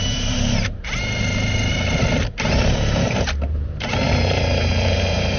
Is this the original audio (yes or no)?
no